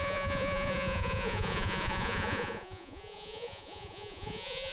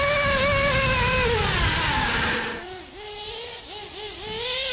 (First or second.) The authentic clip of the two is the second